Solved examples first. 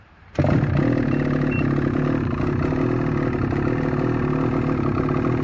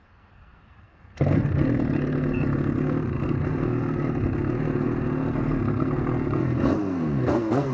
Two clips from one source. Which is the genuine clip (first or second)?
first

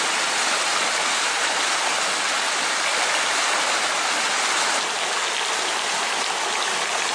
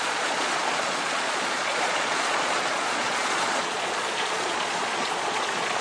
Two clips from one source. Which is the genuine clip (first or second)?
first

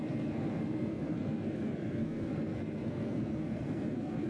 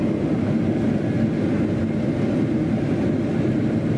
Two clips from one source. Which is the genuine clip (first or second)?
second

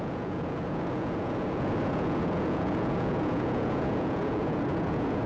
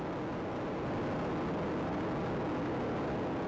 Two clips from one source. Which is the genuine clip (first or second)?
second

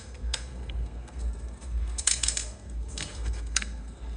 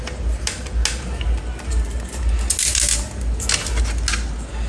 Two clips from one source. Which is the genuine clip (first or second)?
second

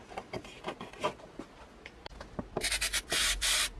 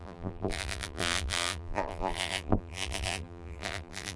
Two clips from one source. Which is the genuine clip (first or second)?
first